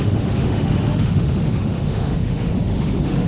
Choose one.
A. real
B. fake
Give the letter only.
B